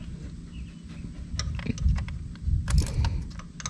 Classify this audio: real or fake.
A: real